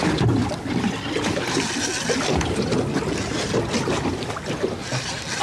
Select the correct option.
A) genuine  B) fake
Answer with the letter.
A